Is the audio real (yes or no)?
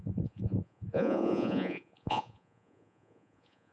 no